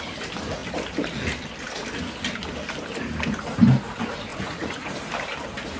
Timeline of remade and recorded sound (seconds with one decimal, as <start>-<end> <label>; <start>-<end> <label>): 0.0-4.3 recorded; 4.3-5.0 remade; 5.0-5.8 recorded